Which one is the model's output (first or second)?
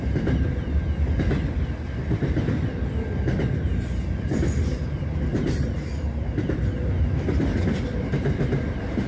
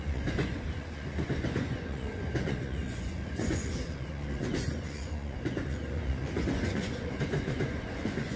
second